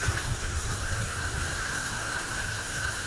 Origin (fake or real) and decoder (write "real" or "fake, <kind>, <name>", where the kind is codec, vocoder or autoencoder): fake, codec, SNAC